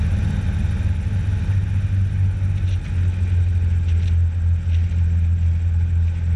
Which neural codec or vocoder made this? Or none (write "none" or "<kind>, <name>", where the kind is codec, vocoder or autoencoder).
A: none